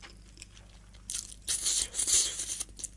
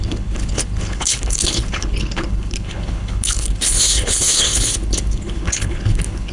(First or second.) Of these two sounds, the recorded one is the first